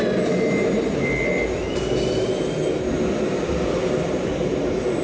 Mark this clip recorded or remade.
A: recorded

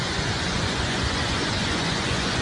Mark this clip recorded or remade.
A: remade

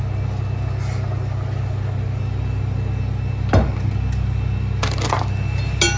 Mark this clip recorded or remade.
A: recorded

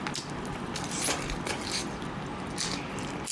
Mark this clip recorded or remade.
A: recorded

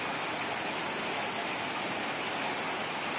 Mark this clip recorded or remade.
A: recorded